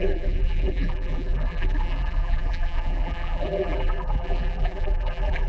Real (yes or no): no